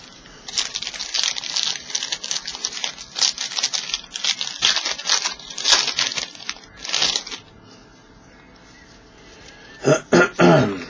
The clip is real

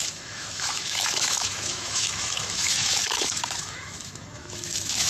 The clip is fake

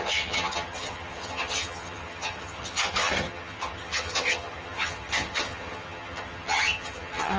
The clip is fake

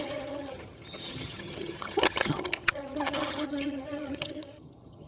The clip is fake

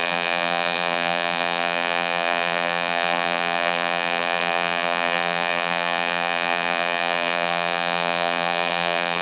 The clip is fake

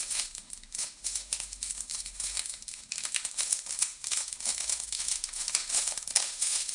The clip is fake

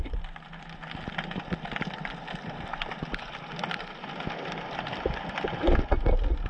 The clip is real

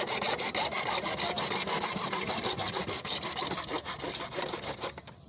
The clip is real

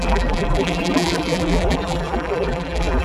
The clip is fake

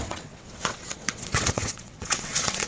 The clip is fake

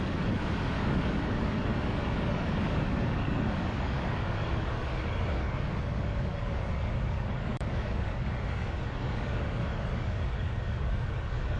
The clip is fake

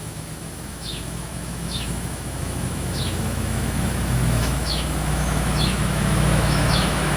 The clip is fake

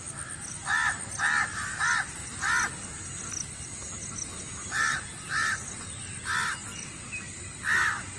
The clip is real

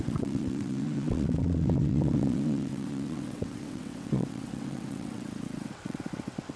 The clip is fake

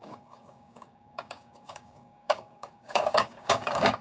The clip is fake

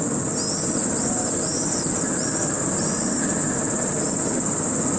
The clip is real